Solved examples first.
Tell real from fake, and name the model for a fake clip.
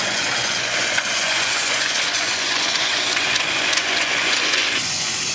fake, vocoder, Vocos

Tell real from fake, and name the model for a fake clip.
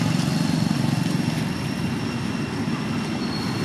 real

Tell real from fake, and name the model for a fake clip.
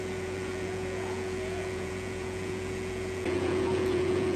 fake, vocoder, Vocos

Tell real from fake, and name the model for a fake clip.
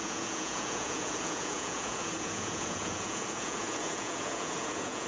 fake, vocoder, Vocos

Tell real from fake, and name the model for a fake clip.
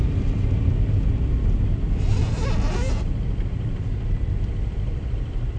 real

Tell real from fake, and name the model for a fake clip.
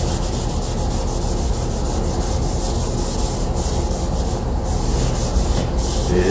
real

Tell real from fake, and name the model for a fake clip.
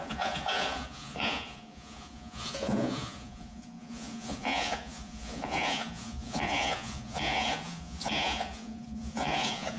fake, vocoder, Vocos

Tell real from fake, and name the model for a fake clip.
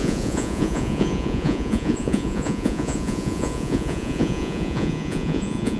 fake, vocoder, Vocos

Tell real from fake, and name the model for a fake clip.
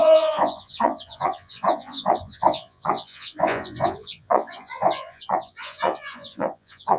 fake, vocoder, Vocos